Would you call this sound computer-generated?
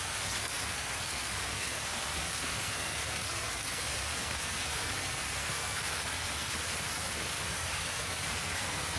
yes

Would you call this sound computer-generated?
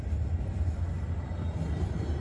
no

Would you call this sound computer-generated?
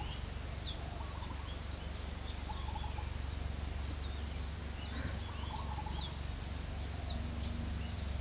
no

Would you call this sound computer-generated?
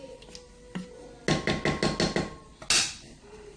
no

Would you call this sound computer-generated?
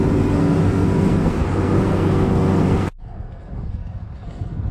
yes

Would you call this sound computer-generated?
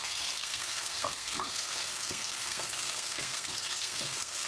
yes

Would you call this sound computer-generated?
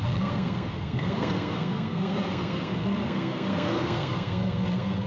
yes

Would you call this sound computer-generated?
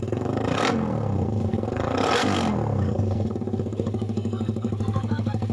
yes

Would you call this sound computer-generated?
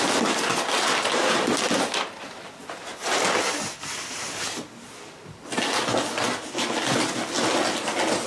no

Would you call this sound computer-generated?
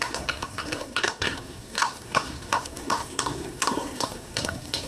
yes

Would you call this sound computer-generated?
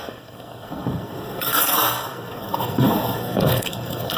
yes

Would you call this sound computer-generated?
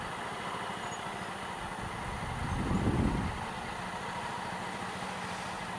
no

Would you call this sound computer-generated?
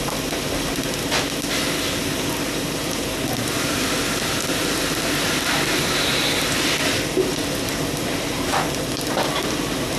no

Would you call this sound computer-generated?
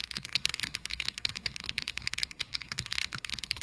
yes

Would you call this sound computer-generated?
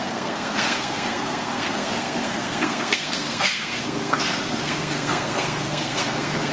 yes